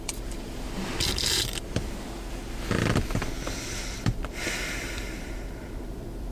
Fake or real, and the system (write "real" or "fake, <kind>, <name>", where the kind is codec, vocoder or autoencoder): fake, vocoder, BigVGAN v2